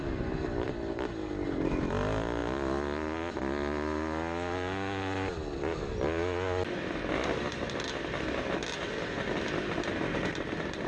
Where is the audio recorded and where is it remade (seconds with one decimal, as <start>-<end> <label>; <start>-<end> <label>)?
0.0-10.9 recorded